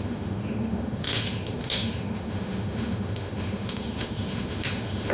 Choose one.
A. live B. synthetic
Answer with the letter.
B